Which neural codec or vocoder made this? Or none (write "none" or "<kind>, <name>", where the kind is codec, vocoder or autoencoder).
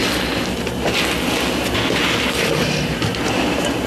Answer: none